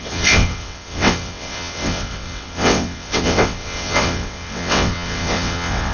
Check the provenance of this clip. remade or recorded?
remade